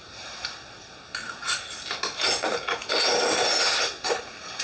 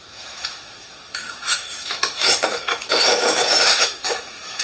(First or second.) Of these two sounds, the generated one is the second